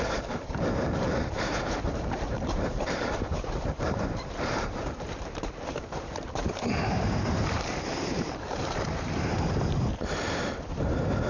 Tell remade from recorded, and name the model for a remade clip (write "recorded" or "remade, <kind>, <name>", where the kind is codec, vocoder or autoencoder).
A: remade, vocoder, BigVGAN v2